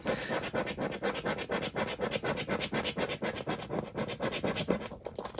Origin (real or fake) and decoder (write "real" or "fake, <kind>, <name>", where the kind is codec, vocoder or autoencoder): real